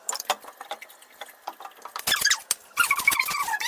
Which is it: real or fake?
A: real